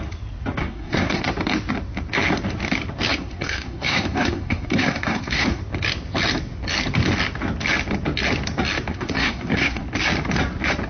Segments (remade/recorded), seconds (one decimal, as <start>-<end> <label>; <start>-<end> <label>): 0.0-0.6 recorded; 0.6-1.2 remade; 1.2-3.1 recorded; 3.1-5.6 remade; 5.6-8.9 recorded; 8.9-9.8 remade; 9.8-10.9 recorded